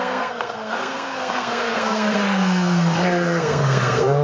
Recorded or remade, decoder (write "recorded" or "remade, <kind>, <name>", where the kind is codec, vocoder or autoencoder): remade, codec, SNAC